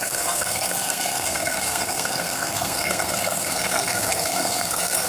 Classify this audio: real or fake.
fake